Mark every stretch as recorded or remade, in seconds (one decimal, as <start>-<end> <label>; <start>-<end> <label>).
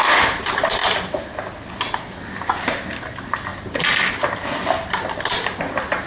0.0-6.1 recorded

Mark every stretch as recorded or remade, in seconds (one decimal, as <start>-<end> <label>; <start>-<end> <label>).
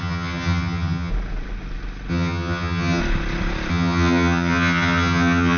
0.0-1.1 remade; 1.1-2.1 recorded; 2.1-3.0 remade; 3.0-3.7 recorded; 3.7-5.6 remade